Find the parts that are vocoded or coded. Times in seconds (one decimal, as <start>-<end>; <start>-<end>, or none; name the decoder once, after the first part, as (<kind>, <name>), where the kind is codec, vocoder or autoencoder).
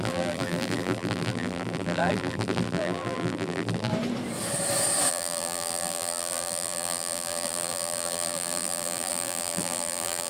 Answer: 0.0-3.9 (vocoder, BigVGAN v2); 5.1-10.3